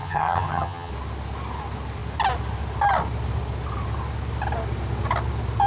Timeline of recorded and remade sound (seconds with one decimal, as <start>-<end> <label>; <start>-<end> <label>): 0.0-0.9 remade; 0.9-5.7 recorded